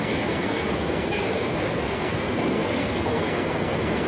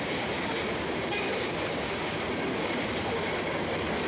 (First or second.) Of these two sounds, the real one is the second